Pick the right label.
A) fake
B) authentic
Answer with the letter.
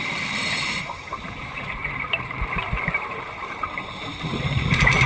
A